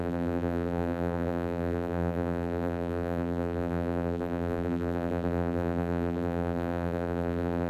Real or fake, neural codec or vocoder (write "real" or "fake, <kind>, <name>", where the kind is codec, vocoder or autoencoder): fake, vocoder, BigVGAN v2